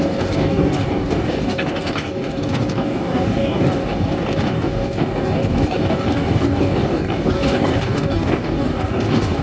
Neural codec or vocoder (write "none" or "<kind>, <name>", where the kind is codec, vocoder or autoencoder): codec, DAC